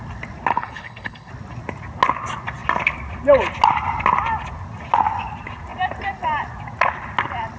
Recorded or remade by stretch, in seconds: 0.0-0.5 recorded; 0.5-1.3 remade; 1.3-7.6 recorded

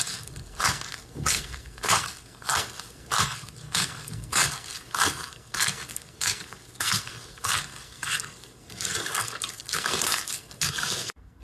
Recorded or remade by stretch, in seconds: 0.0-11.4 remade

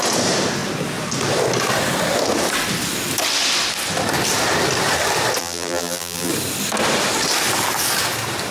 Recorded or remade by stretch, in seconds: 0.0-5.4 recorded; 5.4-6.3 remade; 6.3-8.5 recorded

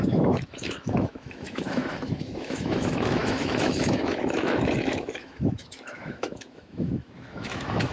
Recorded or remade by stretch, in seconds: 0.0-7.9 remade

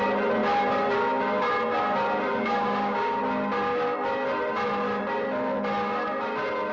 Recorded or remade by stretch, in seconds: 0.0-2.3 recorded; 2.3-3.2 remade; 3.2-6.7 recorded

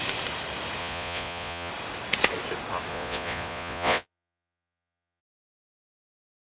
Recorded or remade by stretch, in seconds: 0.0-0.8 recorded; 0.8-1.7 remade; 1.7-2.9 recorded; 2.9-5.2 remade; 5.2-6.5 recorded

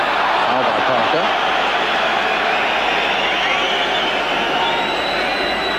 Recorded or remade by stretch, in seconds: 0.0-1.0 remade; 1.0-4.5 recorded; 4.5-5.8 remade

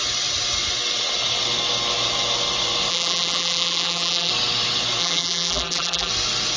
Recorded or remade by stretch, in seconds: 0.0-2.9 recorded; 2.9-4.3 remade; 4.3-5.0 recorded; 5.0-6.1 remade; 6.1-6.6 recorded